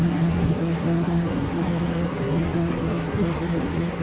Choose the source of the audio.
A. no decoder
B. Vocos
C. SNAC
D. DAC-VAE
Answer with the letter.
C